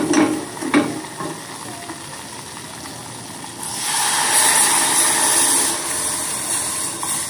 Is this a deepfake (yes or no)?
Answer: no